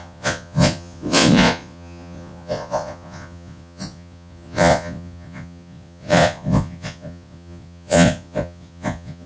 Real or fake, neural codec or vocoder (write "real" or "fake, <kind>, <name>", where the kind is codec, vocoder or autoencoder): fake, vocoder, Vocos